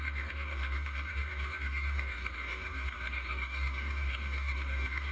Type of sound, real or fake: fake